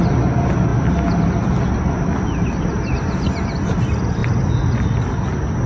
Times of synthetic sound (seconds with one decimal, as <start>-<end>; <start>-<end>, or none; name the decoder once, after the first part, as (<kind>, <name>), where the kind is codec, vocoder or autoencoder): none